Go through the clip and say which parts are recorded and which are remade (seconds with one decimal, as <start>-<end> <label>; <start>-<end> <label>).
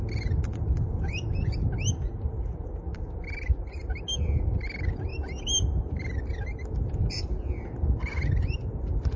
0.0-9.2 recorded